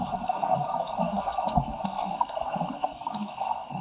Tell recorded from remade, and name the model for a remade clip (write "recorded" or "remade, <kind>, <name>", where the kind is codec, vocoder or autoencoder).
remade, codec, SNAC